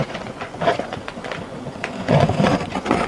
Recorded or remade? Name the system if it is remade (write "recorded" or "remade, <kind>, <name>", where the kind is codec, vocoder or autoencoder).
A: remade, vocoder, Vocos